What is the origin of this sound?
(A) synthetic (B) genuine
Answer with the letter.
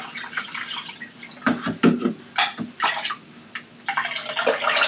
B